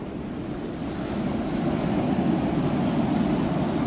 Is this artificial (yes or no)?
no